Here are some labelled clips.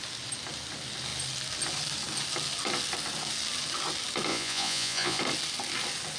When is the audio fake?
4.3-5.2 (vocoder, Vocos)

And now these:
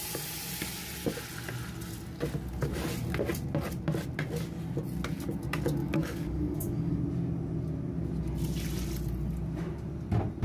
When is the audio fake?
5.8-7.0 (codec, DAC)

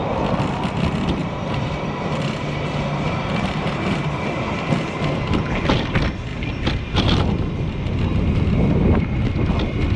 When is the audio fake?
1.2-4.4 (vocoder, BigVGAN v2)

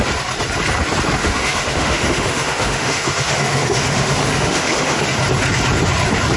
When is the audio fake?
1.2-5.0 (autoencoder, DAC-VAE)